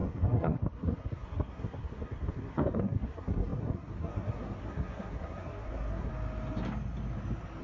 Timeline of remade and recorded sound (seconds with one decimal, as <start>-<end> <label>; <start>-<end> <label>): 0.0-6.1 remade; 6.1-7.6 recorded